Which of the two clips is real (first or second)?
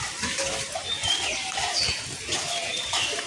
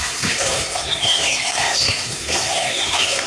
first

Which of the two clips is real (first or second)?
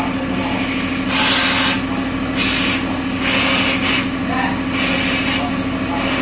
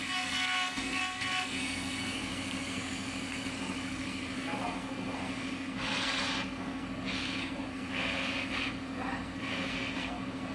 first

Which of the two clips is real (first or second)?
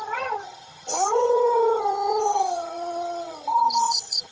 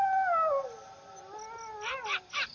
second